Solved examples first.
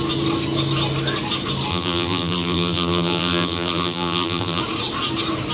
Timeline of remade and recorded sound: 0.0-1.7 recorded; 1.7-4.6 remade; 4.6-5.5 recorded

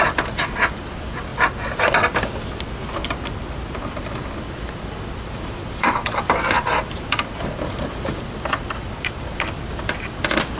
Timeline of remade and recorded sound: 0.0-1.3 remade; 1.3-3.9 recorded; 3.9-10.6 remade

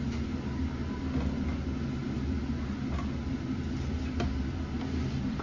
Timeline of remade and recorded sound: 0.0-5.4 recorded

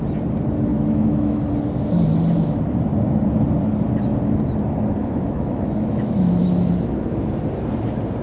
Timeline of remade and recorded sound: 0.0-0.7 recorded; 0.7-1.5 remade; 1.5-5.0 recorded; 5.0-6.4 remade; 6.4-8.2 recorded

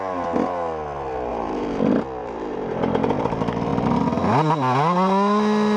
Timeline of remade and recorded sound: 0.0-1.3 recorded; 1.3-1.8 remade; 1.8-2.2 recorded; 2.2-3.2 remade; 3.2-5.8 recorded

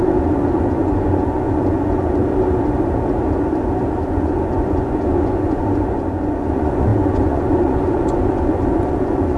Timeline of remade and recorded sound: 0.0-2.2 remade; 2.2-4.0 recorded; 4.0-9.4 remade